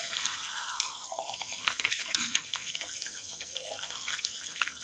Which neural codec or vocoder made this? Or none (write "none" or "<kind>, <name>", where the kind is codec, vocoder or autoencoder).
codec, SNAC